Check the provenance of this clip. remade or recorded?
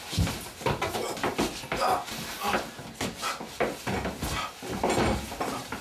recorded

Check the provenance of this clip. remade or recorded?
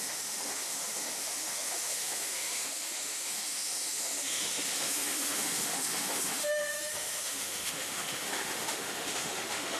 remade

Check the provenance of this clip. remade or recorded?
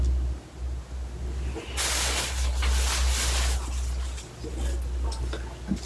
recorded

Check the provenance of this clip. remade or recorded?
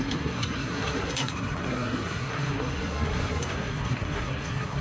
remade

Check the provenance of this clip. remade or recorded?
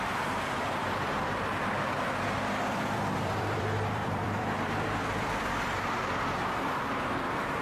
remade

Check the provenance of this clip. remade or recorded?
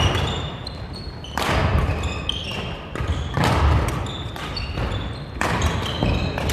recorded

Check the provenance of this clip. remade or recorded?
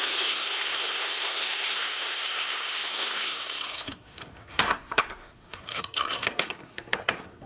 remade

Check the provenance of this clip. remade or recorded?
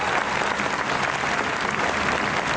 recorded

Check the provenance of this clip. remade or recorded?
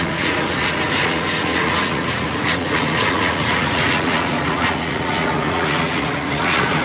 remade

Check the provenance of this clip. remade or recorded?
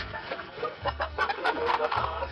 remade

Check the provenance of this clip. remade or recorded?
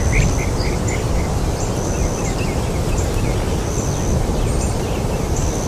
recorded